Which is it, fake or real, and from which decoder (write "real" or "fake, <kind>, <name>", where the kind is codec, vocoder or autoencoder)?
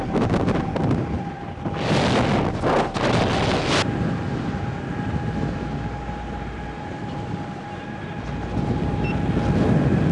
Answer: real